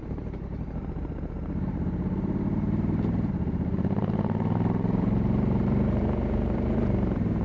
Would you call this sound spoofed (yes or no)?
yes